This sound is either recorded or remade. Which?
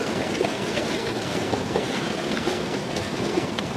remade